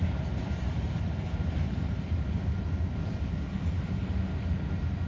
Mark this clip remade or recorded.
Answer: recorded